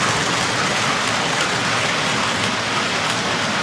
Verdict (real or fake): real